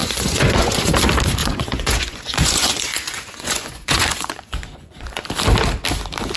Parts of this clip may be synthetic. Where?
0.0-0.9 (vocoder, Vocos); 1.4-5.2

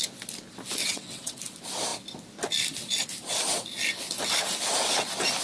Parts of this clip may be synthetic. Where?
0.8-1.4 (vocoder, WaveNeXt)